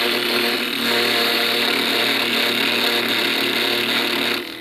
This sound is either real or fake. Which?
real